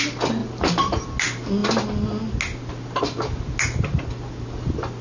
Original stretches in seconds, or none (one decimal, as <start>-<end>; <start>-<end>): 0.0-0.4; 1.0-5.0